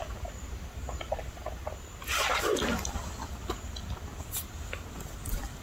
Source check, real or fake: real